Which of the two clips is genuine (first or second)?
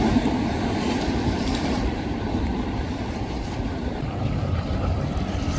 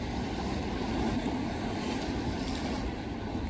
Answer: second